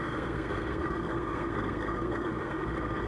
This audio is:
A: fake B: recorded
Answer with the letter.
A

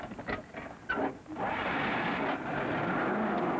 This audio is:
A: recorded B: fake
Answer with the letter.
A